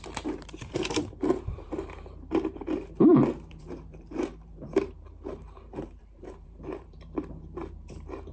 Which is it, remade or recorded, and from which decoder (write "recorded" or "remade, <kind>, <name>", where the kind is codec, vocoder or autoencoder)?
remade, vocoder, BigVGAN v2